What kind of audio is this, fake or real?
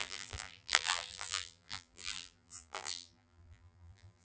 fake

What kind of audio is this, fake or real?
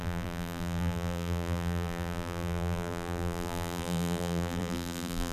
fake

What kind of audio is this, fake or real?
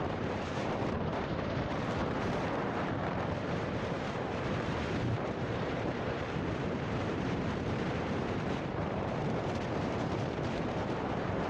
fake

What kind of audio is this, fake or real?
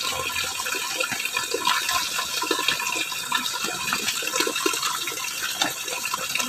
real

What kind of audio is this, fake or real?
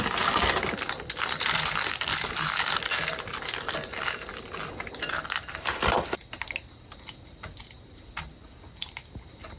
real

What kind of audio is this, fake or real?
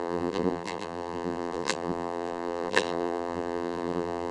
fake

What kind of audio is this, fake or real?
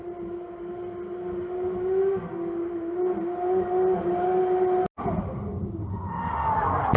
real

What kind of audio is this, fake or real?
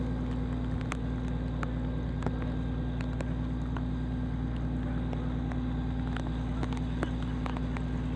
real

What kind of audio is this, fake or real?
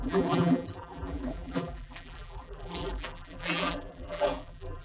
fake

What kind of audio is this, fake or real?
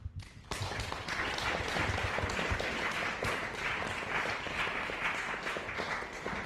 real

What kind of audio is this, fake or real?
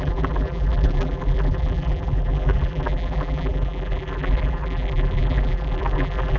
fake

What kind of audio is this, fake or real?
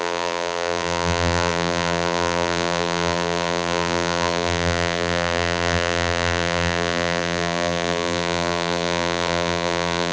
fake